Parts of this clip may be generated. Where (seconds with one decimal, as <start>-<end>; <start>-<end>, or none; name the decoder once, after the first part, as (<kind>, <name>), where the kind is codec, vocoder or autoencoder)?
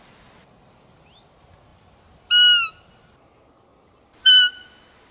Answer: none